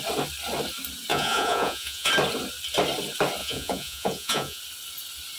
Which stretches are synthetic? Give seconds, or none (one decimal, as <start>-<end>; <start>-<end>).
1.1-2.1; 3.4-4.6

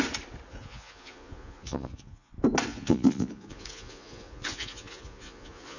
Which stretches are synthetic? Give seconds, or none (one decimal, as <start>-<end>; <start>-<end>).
0.5-2.3; 2.7-5.8

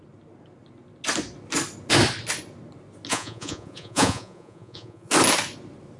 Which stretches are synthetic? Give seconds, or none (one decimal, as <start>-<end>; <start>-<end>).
3.1-5.1

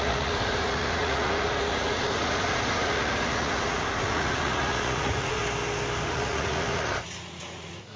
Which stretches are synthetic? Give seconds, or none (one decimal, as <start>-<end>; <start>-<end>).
0.0-5.4; 6.1-8.0

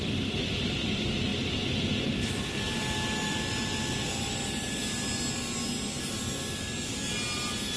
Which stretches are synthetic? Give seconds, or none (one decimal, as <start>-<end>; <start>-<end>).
none

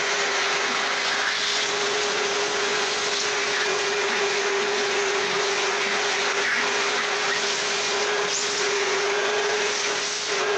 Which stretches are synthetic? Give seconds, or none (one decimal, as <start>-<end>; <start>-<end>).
0.0-10.6

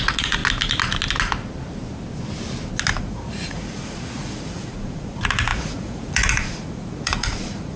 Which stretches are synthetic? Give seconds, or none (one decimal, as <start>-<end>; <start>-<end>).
0.0-0.4; 3.0-7.8

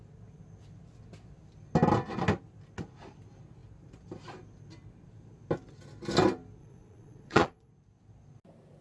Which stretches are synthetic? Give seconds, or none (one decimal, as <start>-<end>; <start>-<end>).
6.6-7.7